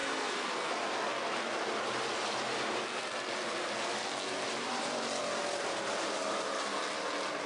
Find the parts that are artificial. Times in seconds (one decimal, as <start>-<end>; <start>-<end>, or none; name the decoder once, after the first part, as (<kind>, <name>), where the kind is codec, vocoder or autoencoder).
0.0-0.7 (codec, SNAC)